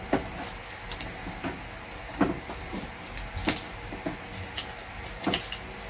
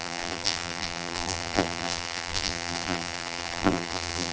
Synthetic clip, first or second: second